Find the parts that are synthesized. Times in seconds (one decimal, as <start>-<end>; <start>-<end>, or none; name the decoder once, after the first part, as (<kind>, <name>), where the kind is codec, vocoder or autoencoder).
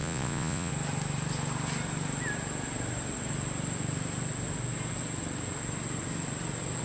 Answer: 0.0-0.7 (vocoder, Vocos)